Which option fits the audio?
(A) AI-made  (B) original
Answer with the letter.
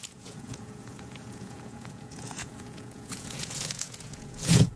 A